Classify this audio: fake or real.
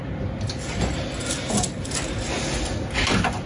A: real